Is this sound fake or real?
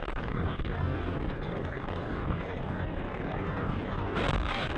fake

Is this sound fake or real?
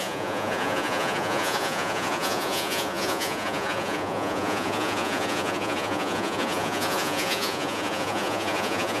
fake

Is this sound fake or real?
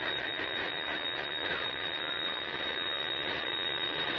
fake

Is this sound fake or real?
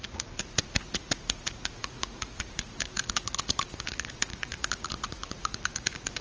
fake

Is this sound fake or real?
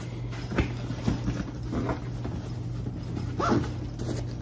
real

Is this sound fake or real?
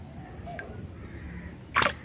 real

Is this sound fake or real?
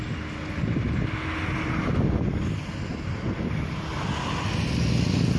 real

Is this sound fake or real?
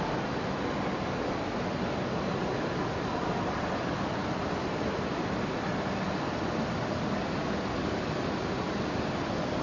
real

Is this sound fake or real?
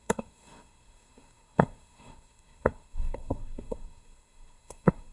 fake